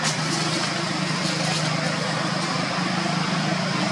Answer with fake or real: real